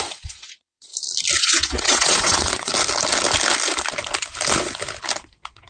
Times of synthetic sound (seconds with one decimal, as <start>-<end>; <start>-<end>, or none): 0.0-0.9; 1.4-2.7; 5.2-5.7